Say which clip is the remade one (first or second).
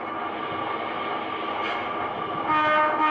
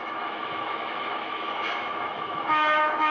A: second